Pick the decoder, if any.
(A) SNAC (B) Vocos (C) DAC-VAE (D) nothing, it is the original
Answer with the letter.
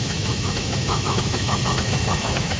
C